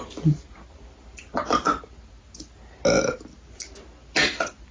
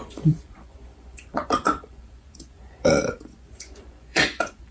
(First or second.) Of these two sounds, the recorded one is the first